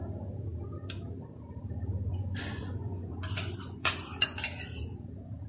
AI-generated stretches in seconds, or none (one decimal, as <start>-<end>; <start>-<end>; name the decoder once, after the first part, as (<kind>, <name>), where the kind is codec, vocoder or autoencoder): 2.1-4.4 (vocoder, Vocos)